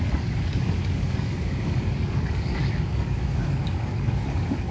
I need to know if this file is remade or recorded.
remade